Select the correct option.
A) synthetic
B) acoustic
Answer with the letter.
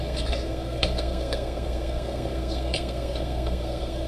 A